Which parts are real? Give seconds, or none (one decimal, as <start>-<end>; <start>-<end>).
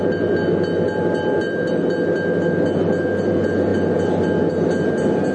0.0-5.3